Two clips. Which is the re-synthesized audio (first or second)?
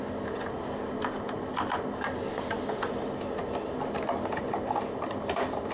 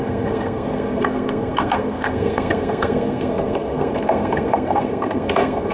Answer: second